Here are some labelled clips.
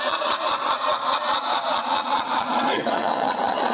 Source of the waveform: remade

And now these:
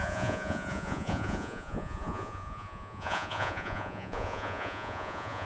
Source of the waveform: remade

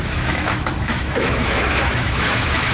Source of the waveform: remade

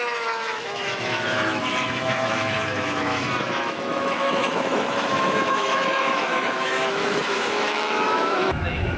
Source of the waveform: remade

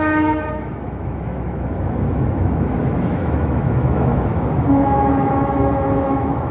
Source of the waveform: remade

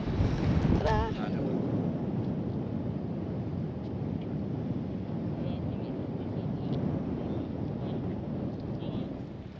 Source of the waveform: recorded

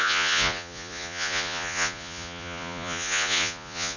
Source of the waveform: remade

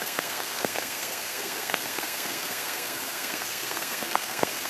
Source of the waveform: remade